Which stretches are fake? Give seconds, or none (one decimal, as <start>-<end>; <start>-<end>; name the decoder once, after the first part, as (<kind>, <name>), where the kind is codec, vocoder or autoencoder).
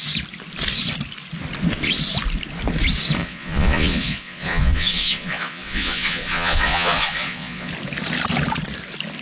3.2-7.7 (vocoder, Vocos)